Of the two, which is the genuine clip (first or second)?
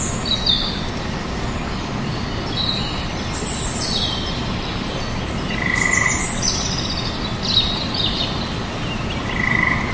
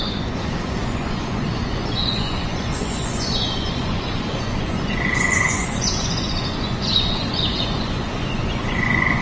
first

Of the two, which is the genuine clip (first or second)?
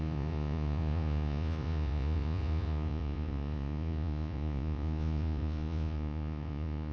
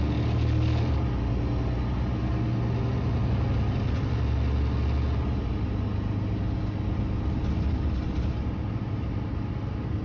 second